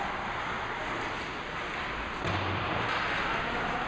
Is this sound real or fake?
real